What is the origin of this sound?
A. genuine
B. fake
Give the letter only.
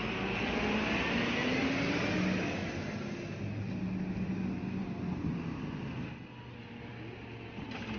A